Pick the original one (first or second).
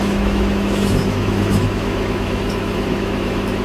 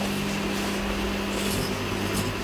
second